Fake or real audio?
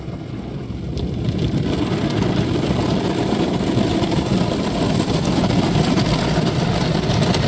real